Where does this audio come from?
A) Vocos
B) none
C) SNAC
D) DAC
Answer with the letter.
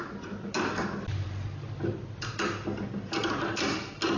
B